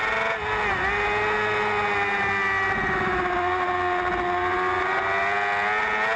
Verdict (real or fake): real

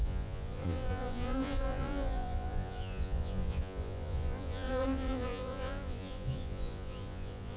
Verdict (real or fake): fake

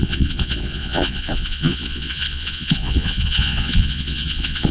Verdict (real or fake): fake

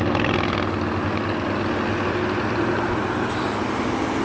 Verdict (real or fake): real